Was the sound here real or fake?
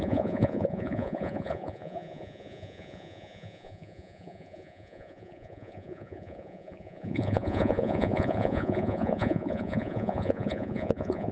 fake